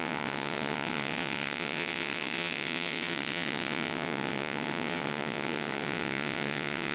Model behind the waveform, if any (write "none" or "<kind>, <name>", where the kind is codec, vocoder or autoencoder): vocoder, WaveNeXt